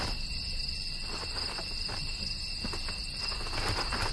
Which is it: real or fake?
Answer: real